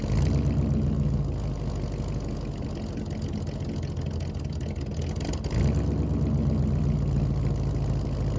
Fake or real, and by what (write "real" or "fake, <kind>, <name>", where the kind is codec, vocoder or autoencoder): real